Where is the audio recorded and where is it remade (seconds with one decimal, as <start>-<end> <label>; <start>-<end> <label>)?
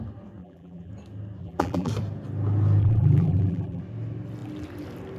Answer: 0.0-0.4 recorded; 0.4-0.9 remade; 0.9-1.4 recorded; 1.4-1.9 remade; 1.9-2.8 recorded; 2.8-3.8 remade; 3.8-5.2 recorded